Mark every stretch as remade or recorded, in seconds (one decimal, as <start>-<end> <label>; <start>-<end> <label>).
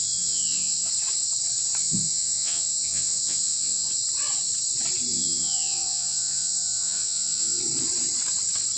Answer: 0.0-0.9 remade; 0.9-1.8 recorded; 1.8-3.9 remade; 3.9-5.1 recorded; 5.1-7.6 remade; 7.6-8.8 recorded